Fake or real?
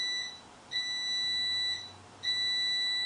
real